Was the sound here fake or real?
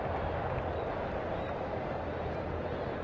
real